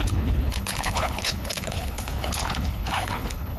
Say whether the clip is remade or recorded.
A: remade